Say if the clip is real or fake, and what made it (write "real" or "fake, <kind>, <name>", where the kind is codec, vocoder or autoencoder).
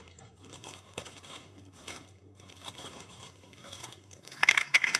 fake, codec, SNAC